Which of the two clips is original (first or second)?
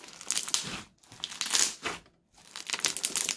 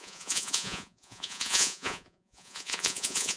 first